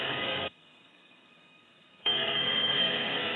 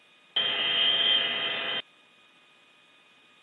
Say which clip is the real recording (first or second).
second